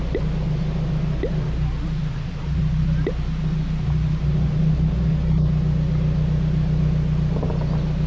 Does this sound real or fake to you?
real